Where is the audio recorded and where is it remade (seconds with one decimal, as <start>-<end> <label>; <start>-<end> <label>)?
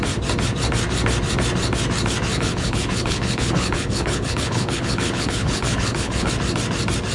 0.0-2.3 recorded; 2.3-6.3 remade; 6.3-7.1 recorded